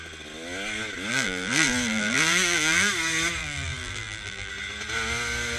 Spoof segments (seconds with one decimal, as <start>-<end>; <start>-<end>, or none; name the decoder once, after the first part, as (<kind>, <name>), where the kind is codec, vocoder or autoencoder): 1.1-2.9 (vocoder, BigVGAN v2); 3.4-4.5